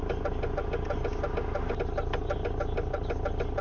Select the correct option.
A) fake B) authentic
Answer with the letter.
B